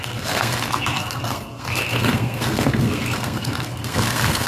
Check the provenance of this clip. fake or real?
fake